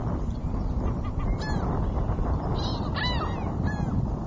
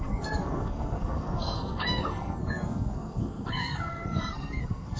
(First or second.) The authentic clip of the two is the first